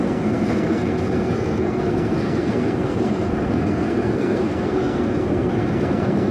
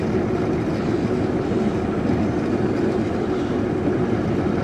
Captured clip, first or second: second